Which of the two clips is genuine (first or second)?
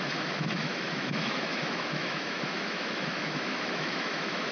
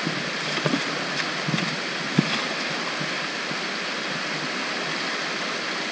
second